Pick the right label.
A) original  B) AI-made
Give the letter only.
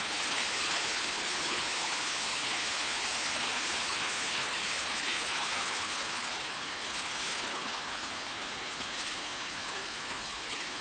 B